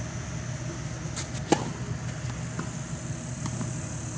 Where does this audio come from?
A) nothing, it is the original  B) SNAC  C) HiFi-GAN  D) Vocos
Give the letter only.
A